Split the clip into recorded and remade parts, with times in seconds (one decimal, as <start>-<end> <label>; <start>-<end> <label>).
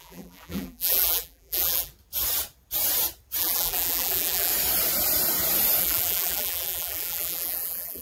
0.0-1.9 remade; 1.9-3.4 recorded; 3.4-4.5 remade; 4.5-5.8 recorded; 5.8-8.0 remade